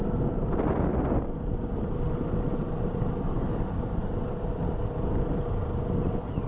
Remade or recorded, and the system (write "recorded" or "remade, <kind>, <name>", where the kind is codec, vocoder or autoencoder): recorded